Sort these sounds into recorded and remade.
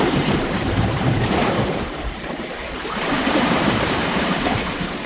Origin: remade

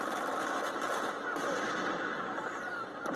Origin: remade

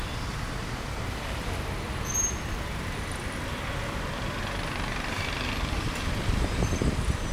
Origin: remade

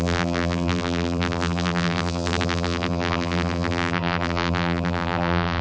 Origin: remade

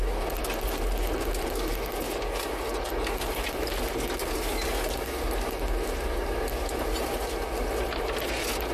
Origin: recorded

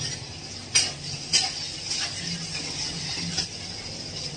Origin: recorded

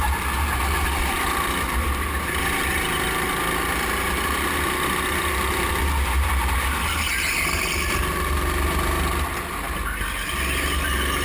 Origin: recorded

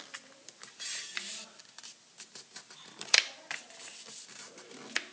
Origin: recorded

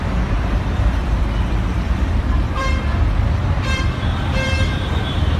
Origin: remade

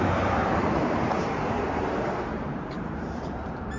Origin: remade